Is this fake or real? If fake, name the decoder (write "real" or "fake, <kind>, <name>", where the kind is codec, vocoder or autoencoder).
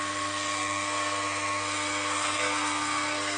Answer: fake, codec, SNAC